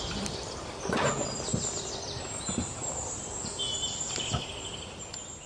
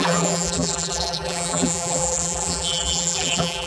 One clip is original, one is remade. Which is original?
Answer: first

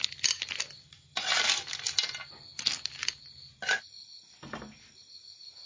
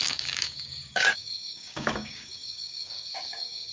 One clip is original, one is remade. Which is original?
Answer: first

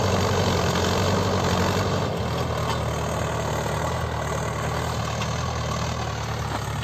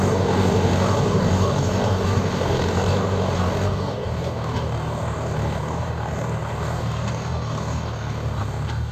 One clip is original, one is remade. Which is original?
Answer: first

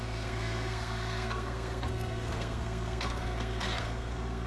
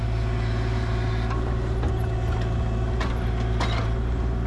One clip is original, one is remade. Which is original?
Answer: second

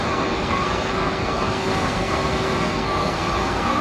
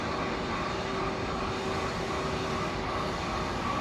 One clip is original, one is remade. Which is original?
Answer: second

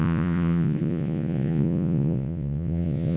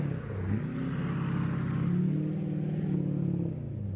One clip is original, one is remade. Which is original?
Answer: second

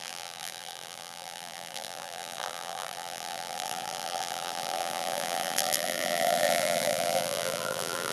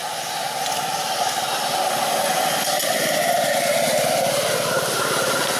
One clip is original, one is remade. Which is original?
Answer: second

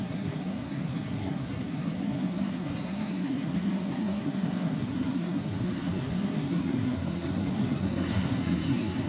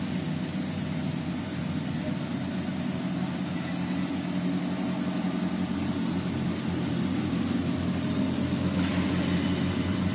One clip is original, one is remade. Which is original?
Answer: second